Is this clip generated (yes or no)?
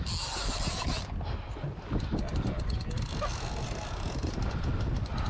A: no